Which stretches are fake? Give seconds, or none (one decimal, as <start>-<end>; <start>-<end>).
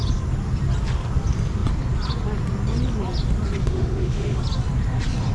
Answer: 3.6-4.4